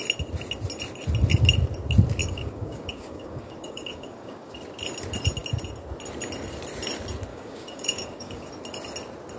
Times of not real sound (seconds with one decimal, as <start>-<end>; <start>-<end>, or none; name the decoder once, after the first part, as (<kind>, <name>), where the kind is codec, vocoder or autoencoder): 2.2-4.5 (codec, DAC); 7.3-8.5

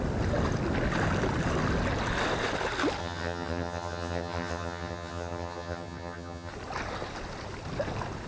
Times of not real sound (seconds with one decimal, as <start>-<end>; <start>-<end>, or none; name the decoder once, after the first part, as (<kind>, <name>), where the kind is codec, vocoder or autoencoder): 3.0-6.5 (vocoder, HiFi-GAN)

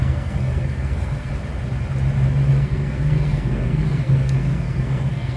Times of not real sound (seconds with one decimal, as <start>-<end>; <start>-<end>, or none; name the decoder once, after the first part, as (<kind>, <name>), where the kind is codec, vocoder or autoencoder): 0.0-1.3 (codec, SNAC); 2.5-5.4

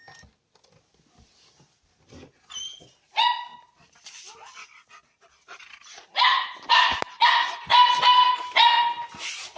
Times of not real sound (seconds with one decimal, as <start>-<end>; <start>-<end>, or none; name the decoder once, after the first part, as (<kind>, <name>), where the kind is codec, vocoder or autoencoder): none

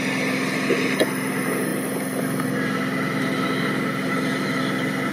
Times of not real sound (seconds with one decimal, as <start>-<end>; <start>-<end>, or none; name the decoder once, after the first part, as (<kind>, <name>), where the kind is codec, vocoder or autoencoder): none

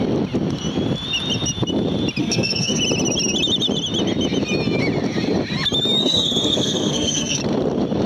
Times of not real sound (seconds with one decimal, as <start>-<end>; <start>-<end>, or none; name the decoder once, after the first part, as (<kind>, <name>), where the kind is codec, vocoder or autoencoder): 2.2-2.8 (codec, SNAC); 6.0-7.4

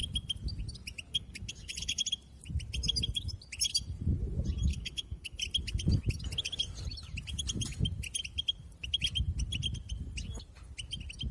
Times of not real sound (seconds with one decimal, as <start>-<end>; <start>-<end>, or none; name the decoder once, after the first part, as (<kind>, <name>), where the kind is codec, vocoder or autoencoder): 1.1-2.0 (codec, HILCodec); 4.7-5.4

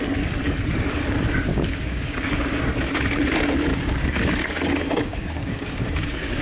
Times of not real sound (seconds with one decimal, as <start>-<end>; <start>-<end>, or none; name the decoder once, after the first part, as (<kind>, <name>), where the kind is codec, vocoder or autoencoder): 1.5-2.3 (codec, DAC); 3.7-6.4